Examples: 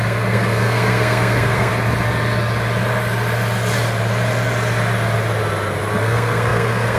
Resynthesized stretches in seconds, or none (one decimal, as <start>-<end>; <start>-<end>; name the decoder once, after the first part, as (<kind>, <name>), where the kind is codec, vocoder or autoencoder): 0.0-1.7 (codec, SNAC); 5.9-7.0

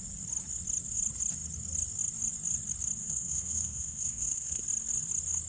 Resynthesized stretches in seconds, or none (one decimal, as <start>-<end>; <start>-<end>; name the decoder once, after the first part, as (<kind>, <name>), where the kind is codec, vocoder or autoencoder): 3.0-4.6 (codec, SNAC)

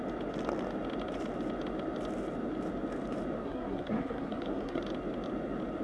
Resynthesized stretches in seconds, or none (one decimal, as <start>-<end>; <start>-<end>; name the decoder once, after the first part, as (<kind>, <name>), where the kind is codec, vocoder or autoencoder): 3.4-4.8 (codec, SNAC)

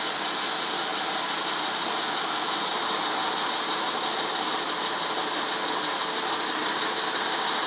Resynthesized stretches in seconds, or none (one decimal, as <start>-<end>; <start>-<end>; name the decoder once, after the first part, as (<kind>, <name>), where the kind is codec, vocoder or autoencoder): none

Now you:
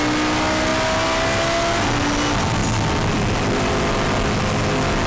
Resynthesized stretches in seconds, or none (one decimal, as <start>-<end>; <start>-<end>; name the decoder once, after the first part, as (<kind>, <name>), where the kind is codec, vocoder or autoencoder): none

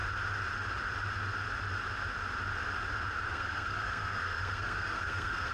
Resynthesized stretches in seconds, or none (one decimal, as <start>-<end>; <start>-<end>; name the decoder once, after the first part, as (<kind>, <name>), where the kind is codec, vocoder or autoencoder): 3.3-5.5 (codec, SNAC)